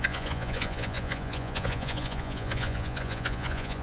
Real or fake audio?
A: fake